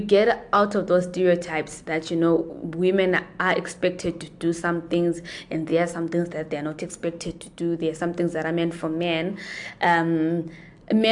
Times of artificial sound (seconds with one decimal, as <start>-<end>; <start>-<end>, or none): none